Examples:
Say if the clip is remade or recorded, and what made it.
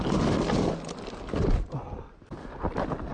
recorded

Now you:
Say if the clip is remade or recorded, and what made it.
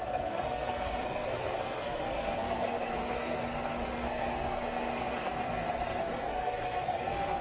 remade, codec, SNAC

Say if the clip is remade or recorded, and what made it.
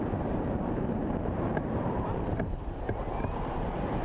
remade, vocoder, BigVGAN v2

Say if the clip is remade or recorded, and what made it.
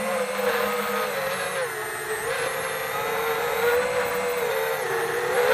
recorded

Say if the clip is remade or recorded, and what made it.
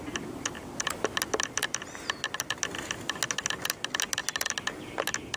recorded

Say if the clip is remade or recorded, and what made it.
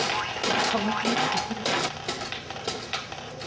recorded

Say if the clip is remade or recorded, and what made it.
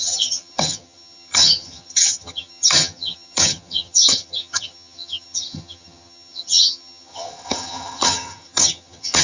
remade, vocoder, HiFi-GAN